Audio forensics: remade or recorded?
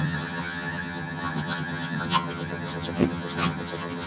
remade